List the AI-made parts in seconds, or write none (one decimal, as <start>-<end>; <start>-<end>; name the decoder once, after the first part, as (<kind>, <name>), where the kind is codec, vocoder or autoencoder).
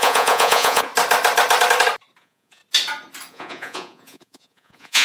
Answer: 0.0-0.9 (vocoder, Vocos); 2.2-2.6; 3.3-5.0